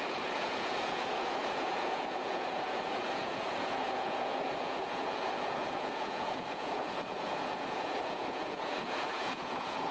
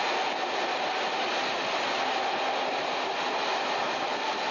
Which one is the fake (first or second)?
first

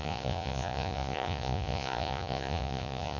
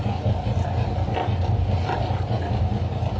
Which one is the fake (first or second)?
first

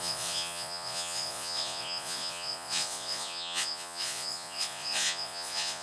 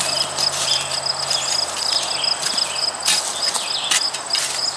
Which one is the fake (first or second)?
first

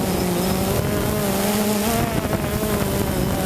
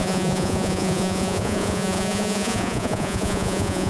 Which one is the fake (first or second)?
second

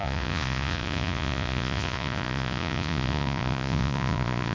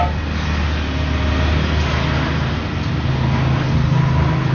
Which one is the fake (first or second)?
first